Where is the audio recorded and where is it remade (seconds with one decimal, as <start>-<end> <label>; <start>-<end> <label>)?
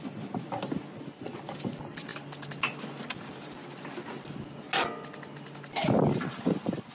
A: 0.0-6.9 recorded